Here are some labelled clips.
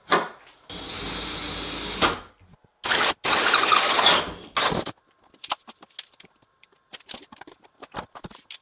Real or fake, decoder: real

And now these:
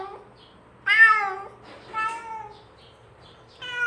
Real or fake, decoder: real